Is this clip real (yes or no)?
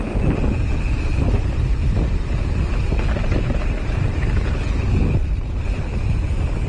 yes